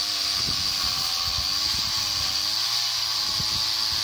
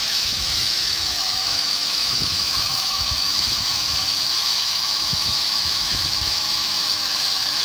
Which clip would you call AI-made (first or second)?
second